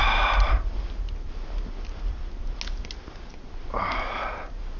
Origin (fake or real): real